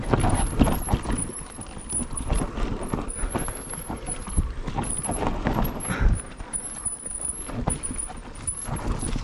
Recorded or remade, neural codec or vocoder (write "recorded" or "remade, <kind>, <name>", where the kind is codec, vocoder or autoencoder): recorded